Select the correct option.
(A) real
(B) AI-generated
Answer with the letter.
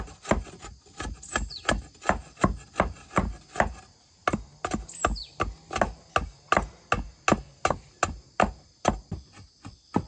A